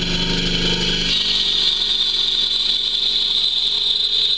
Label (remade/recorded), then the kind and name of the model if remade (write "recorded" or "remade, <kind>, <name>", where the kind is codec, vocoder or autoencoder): recorded